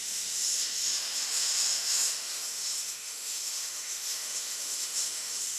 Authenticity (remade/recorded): remade